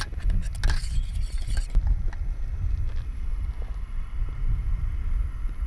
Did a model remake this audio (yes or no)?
no